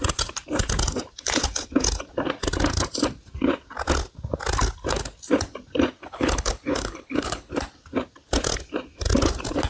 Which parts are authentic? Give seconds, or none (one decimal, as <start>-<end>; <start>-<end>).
0.0-6.0; 7.5-9.7